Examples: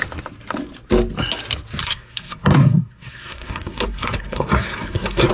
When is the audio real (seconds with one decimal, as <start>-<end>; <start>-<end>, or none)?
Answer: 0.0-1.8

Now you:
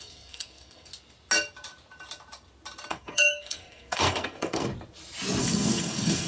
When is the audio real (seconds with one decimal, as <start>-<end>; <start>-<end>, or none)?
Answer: 0.9-2.9; 4.7-5.4

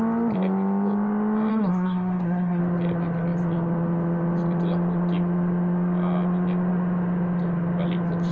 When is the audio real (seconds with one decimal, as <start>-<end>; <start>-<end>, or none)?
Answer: 0.0-1.5; 2.6-8.3

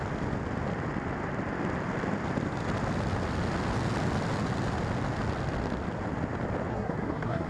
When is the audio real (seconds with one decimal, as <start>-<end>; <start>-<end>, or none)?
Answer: 0.0-6.7

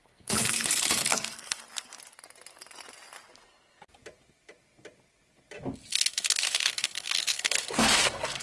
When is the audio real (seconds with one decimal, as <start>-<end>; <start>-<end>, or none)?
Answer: 1.6-5.9